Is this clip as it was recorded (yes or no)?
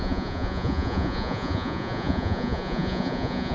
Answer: no